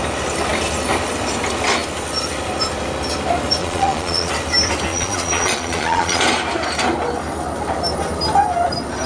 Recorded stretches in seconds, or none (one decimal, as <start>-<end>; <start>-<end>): 0.0-3.6; 4.3-4.9; 6.2-9.1